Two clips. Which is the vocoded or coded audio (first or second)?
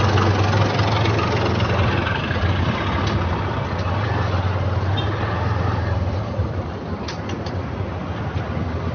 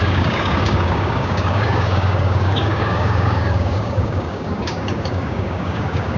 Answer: second